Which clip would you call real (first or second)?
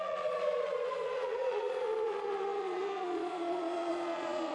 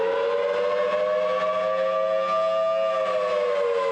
second